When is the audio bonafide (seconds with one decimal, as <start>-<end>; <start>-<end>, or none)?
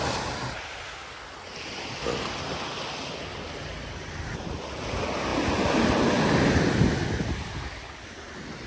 0.0-8.7